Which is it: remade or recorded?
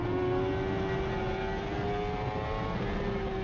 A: recorded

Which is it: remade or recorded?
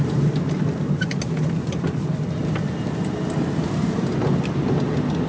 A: recorded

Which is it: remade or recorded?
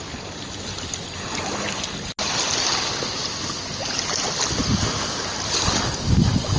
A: recorded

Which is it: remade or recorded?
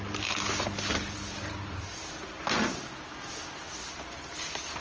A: recorded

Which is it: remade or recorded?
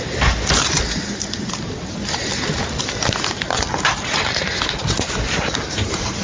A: recorded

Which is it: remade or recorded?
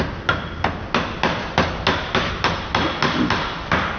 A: recorded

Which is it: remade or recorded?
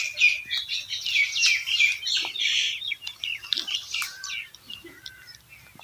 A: recorded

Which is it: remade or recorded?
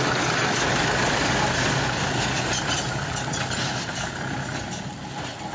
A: recorded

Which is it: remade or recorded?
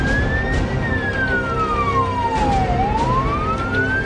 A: recorded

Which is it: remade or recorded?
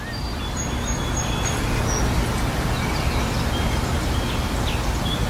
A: recorded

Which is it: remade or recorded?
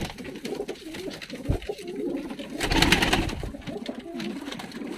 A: recorded